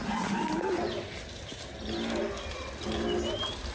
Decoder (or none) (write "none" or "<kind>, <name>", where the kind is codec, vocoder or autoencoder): none